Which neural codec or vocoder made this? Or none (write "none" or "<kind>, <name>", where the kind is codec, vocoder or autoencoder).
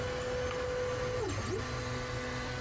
none